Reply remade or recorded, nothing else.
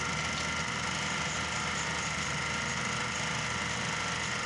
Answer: recorded